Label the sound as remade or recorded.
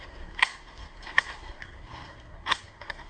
remade